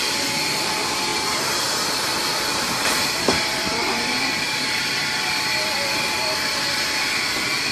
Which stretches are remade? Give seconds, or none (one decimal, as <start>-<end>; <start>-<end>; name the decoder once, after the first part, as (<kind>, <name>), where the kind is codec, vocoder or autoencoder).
1.1-4.8 (vocoder, BigVGAN v2)